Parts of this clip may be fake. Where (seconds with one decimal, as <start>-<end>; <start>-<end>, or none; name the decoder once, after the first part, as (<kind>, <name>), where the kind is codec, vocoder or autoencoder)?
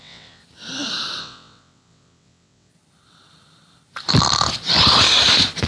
0.0-0.4 (vocoder, WaveNeXt); 1.2-2.7